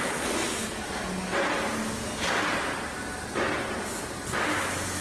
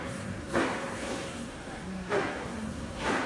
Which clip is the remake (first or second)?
second